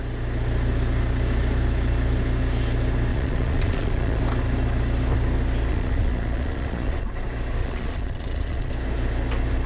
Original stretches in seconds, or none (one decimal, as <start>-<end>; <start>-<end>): 0.0-3.1; 4.2-5.7; 7.1-7.6; 8.7-9.7